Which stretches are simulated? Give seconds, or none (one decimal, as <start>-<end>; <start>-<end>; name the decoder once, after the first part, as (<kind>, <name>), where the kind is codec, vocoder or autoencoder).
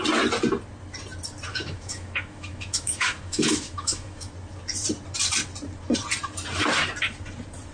1.5-4.3 (autoencoder, DAC-VAE)